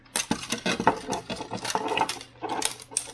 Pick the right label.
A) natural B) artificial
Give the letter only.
A